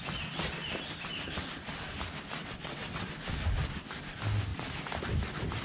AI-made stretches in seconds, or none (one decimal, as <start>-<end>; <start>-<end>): 2.4-3.1